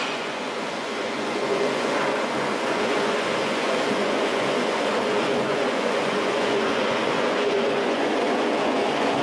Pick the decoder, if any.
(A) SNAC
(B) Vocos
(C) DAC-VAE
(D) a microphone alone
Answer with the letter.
B